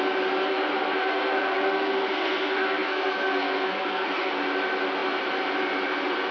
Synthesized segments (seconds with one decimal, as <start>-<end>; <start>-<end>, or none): 0.5-4.3